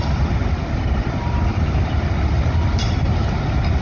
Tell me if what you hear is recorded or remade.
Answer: recorded